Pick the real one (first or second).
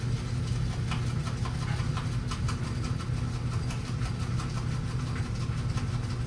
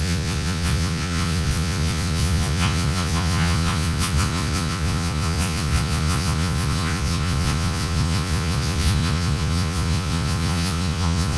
first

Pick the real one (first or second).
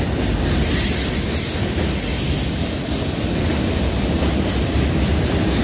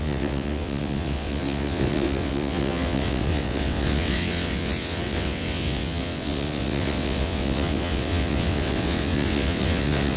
first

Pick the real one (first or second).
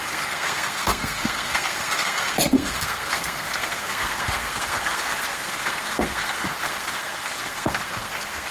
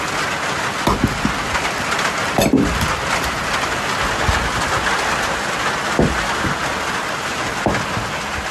second